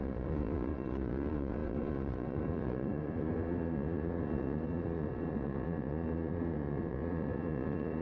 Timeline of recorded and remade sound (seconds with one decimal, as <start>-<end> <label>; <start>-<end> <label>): 0.0-8.0 remade